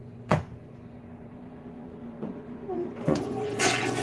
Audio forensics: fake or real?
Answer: fake